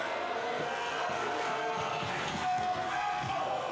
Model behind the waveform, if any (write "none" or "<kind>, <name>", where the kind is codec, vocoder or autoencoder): codec, SNAC